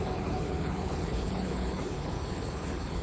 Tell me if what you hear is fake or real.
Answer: fake